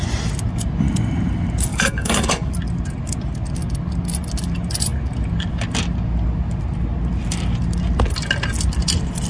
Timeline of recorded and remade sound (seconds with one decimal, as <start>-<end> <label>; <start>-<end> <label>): 0.0-1.7 recorded; 1.7-2.5 remade; 2.5-9.3 recorded